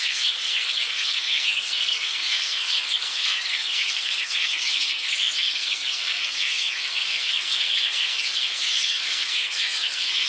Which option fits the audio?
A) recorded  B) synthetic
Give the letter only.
B